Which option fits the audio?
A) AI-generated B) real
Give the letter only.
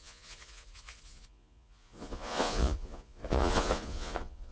A